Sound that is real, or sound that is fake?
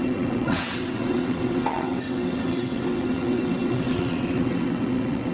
fake